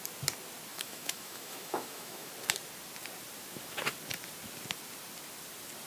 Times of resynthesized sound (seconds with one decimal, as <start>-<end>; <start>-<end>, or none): 0.7-2.3

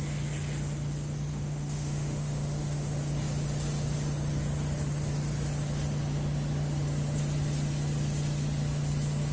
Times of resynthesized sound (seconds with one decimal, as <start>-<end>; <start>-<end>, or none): 1.3-3.0

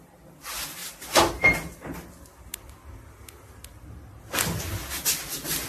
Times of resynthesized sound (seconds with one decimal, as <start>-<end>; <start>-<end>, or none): none

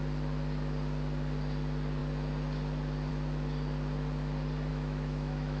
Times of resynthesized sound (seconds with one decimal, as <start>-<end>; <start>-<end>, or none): 4.7-5.6

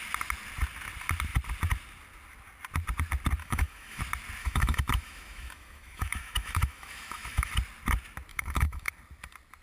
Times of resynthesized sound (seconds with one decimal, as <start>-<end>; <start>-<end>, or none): 3.4-4.0; 4.4-7.5; 8.3-8.9

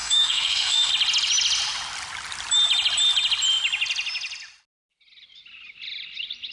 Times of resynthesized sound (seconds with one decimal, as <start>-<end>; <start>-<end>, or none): 0.0-0.9

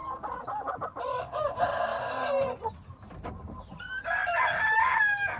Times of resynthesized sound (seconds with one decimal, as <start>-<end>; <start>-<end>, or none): none